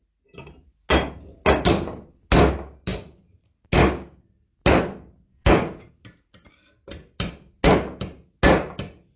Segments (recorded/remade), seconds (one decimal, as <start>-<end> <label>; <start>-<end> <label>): 0.0-5.3 recorded; 5.3-5.9 remade; 5.9-9.2 recorded